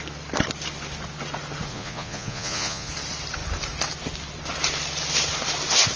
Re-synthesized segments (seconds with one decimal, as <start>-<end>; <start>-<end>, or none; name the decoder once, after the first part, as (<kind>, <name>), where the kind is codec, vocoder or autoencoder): 1.7-2.9 (vocoder, Vocos)